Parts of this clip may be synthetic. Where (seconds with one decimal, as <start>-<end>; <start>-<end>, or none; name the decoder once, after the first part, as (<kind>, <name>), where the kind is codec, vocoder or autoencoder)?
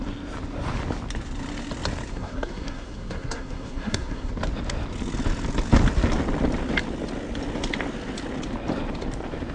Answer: 2.1-4.3 (codec, SNAC)